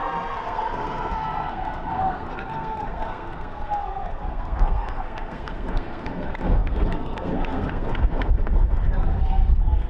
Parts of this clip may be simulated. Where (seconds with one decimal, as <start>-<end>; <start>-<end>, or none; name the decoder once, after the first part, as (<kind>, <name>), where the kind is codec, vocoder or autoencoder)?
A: 0.0-9.9 (codec, SNAC)